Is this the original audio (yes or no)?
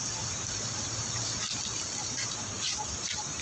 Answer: yes